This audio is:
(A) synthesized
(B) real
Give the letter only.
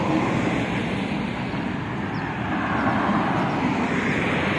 B